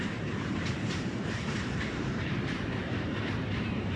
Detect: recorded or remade remade